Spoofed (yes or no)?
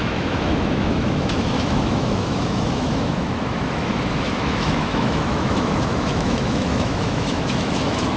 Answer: yes